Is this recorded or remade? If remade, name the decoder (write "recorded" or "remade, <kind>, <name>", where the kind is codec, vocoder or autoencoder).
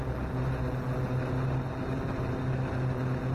recorded